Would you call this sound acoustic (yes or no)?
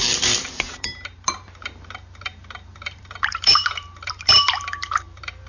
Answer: no